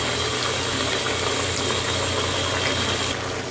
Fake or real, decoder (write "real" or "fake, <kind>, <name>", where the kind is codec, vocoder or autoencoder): real